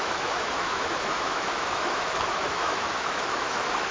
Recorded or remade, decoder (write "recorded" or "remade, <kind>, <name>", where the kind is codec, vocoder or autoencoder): remade, autoencoder, DAC-VAE